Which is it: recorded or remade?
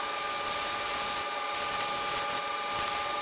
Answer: recorded